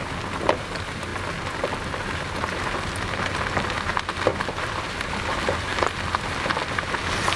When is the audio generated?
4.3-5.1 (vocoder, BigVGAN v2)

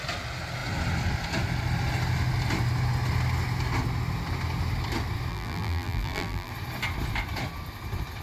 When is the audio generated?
5.3-6.5 (vocoder, BigVGAN v2)

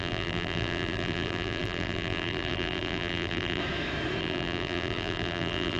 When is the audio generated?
0.0-3.6 (vocoder, BigVGAN v2); 4.2-5.8

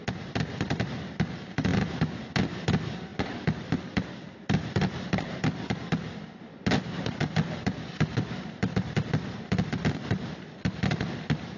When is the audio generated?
3.1-6.4 (vocoder, BigVGAN v2); 7.2-10.2

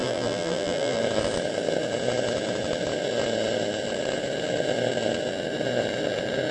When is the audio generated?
0.0-1.0 (vocoder, BigVGAN v2)

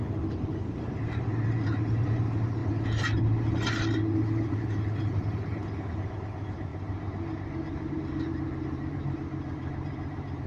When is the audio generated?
0.0-10.5 (vocoder, BigVGAN v2)

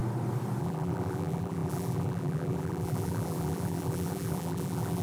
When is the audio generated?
0.6-5.0 (vocoder, BigVGAN v2)

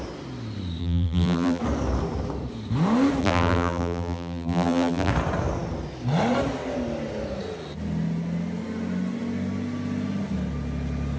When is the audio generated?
0.8-1.6 (vocoder, BigVGAN v2); 3.2-5.1